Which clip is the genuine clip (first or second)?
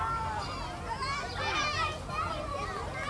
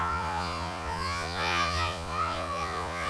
first